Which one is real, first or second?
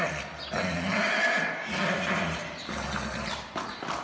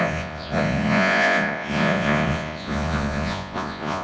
first